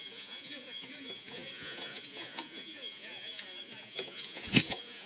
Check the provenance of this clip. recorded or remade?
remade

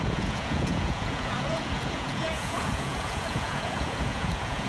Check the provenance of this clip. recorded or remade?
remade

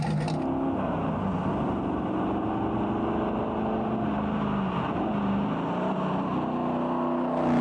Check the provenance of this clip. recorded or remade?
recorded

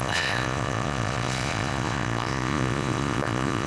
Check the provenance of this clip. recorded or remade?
remade